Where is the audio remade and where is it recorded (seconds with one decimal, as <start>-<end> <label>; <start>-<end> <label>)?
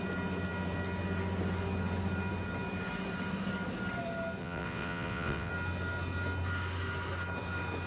0.0-4.4 recorded; 4.4-5.5 remade; 5.5-7.9 recorded